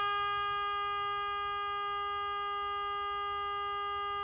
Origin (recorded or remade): recorded